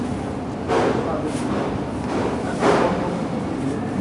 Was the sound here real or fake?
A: real